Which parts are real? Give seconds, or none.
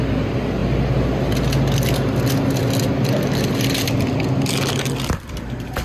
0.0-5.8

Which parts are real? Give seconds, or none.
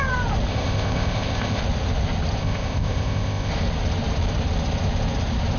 0.0-0.5; 1.6-2.4; 3.5-5.6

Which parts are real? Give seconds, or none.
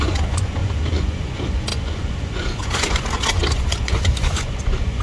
none